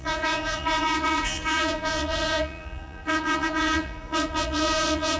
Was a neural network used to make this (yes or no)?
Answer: yes